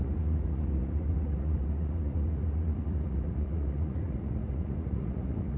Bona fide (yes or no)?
no